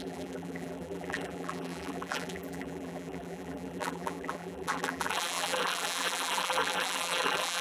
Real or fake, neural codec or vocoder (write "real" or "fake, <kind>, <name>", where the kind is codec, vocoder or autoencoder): fake, vocoder, BigVGAN v2